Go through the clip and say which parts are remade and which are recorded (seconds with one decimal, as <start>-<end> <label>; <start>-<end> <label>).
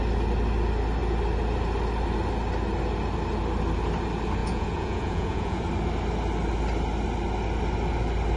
0.0-4.4 recorded; 4.4-5.6 remade; 5.6-8.4 recorded